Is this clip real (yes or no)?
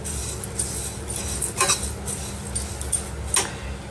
yes